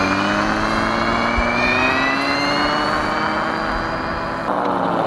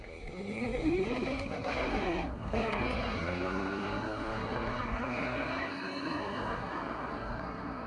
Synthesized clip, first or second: second